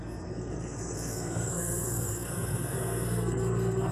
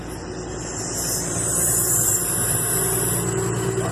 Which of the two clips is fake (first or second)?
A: first